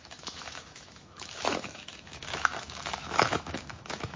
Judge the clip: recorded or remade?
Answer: remade